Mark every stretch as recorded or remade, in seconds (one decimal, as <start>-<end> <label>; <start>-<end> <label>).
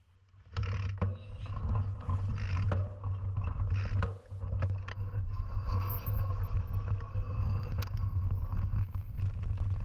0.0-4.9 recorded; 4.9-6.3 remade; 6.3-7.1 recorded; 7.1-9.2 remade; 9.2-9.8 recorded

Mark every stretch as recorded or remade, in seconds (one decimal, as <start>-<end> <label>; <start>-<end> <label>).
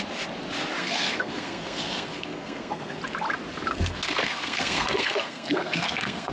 0.0-0.8 recorded; 0.8-3.0 remade; 3.0-3.7 recorded; 3.7-6.3 remade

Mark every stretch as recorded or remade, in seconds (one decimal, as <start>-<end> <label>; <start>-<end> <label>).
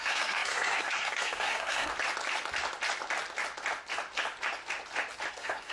0.0-1.9 remade; 1.9-5.3 recorded; 5.3-5.7 remade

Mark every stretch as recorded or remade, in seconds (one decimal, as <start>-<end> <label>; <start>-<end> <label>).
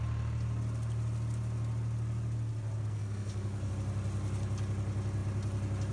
0.0-2.8 recorded; 2.8-3.7 remade; 3.7-5.9 recorded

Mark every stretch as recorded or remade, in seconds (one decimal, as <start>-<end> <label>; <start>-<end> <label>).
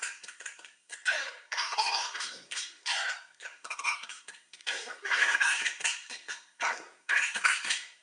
0.0-8.0 remade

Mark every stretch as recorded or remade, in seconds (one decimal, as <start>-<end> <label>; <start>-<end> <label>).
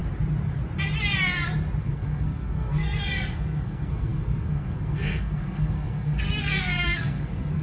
0.0-1.8 recorded; 1.8-7.6 remade